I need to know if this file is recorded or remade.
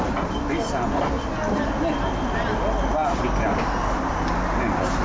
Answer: recorded